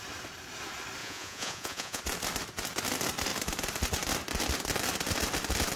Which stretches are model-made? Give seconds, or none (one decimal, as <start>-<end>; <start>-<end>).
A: 1.0-2.0